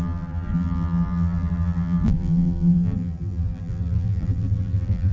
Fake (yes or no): yes